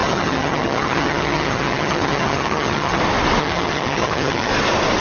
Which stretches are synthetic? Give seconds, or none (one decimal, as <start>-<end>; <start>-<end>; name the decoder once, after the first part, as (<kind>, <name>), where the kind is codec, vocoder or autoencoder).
0.0-3.0 (vocoder, HiFi-GAN); 3.4-4.5